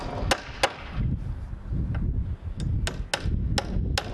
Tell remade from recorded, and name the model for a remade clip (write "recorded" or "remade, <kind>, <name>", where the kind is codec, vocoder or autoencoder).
recorded